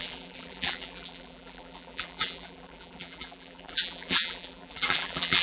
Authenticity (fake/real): fake